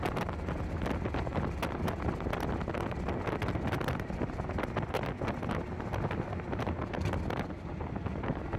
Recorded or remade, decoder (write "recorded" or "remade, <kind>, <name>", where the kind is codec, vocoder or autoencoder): recorded